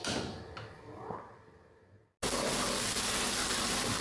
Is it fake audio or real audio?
real